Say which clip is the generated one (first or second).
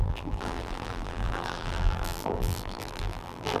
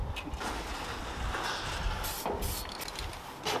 first